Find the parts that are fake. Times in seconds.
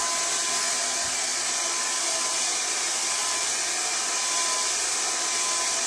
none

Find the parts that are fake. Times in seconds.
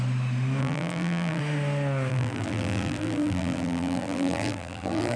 0.6-1.4 (vocoder, BigVGAN v2); 2.1-5.2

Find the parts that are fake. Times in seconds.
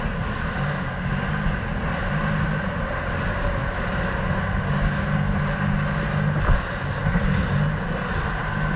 none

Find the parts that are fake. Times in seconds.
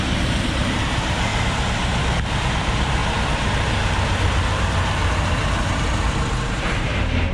0.0-1.3 (vocoder, BigVGAN v2); 2.5-7.3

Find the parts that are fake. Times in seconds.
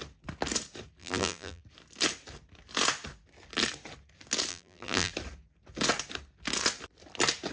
1.0-1.6 (vocoder, BigVGAN v2); 4.5-5.1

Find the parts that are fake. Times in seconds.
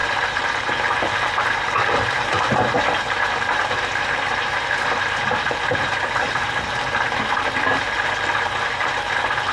0.8-3.9 (vocoder, BigVGAN v2); 5.4-9.5